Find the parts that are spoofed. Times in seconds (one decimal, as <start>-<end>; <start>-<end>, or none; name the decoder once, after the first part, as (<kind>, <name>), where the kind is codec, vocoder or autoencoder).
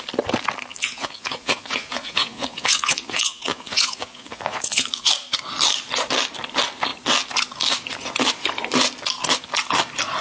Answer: 0.7-5.1 (vocoder, Vocos)